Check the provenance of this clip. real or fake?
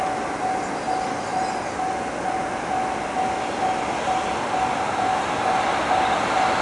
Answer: real